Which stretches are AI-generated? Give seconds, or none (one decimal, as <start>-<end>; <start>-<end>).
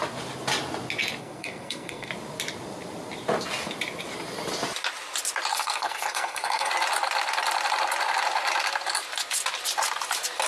1.2-2.1; 5.5-6.7